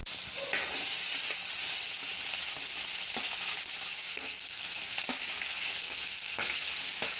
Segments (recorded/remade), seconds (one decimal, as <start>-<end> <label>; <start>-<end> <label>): 0.0-4.1 recorded; 4.1-4.8 remade; 4.8-5.8 recorded; 5.8-6.7 remade; 6.7-7.2 recorded